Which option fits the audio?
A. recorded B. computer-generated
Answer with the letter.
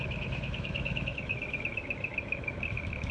B